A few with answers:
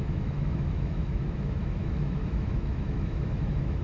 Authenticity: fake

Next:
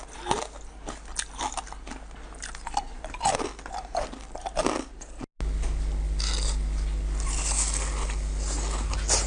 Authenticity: real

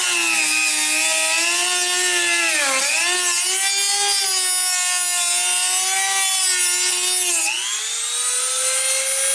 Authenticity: real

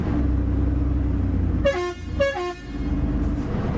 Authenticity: real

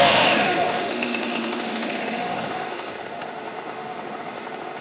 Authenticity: fake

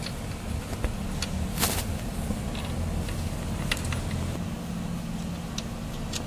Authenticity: real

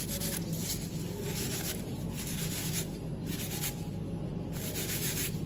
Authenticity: real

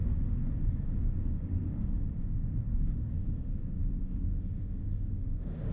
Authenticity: fake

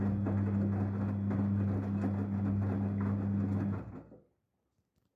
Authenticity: real